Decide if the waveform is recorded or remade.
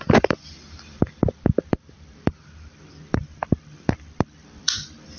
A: remade